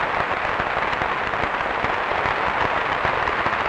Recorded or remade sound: recorded